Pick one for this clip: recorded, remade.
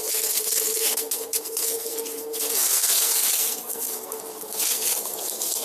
remade